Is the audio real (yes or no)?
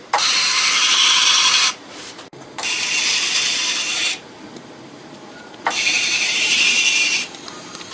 no